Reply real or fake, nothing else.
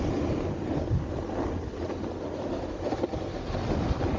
real